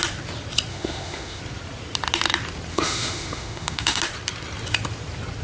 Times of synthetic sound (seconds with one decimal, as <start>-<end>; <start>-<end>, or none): 0.7-1.4; 2.7-4.0